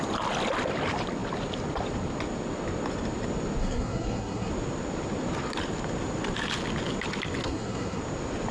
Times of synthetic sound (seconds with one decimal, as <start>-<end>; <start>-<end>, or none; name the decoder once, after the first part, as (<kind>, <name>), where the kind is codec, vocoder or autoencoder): 3.6-4.5 (codec, SNAC); 7.4-8.0